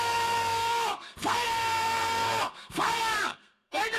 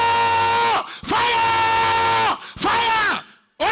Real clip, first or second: second